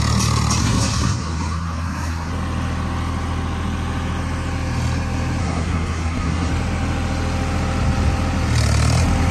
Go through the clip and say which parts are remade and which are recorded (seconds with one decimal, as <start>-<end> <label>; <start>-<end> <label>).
0.0-0.6 recorded; 0.6-2.3 remade; 2.3-5.4 recorded; 5.4-6.5 remade; 6.5-9.3 recorded